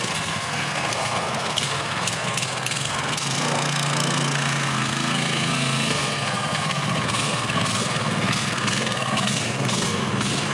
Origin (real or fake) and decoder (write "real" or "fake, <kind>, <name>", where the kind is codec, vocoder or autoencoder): fake, codec, SNAC